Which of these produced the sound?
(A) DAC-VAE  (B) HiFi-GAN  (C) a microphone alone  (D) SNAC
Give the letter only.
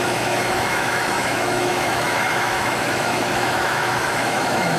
A